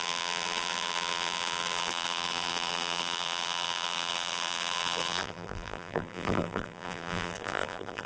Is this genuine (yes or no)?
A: no